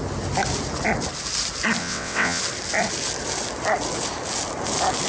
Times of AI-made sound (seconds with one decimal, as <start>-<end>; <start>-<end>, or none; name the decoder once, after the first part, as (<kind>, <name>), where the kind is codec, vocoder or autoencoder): 1.8-2.4 (vocoder, WaveNeXt)